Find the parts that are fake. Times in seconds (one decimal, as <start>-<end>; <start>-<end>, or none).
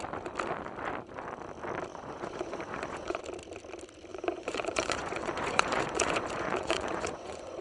1.9-3.2; 4.1-7.6